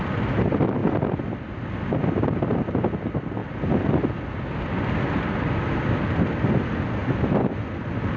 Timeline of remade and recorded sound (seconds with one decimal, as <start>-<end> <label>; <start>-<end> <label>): 0.0-8.2 recorded